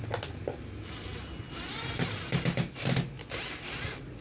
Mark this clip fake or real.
real